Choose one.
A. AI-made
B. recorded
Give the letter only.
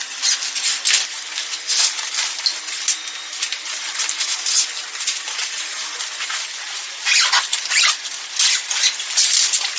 B